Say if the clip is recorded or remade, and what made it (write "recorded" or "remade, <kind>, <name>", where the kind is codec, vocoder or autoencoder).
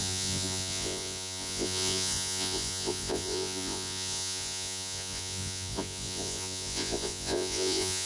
remade, vocoder, Vocos